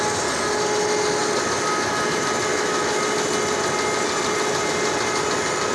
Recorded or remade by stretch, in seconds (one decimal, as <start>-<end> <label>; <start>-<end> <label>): 0.0-2.5 recorded; 2.5-3.0 remade; 3.0-5.7 recorded